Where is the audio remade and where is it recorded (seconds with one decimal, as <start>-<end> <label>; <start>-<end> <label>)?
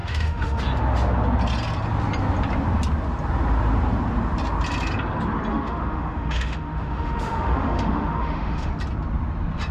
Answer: 0.0-0.6 remade; 0.6-5.5 recorded; 5.5-8.7 remade; 8.7-9.7 recorded